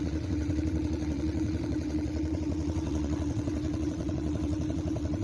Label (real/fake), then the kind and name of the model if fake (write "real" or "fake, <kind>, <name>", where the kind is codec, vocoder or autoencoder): fake, vocoder, WaveNeXt